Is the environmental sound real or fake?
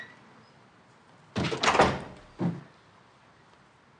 real